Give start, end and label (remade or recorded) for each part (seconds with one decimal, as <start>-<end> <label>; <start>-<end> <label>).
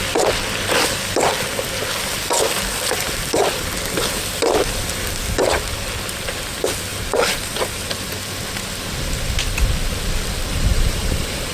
0.0-6.9 recorded; 6.9-7.9 remade; 7.9-10.7 recorded; 10.7-11.5 remade